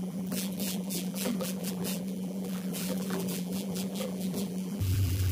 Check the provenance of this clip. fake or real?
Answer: fake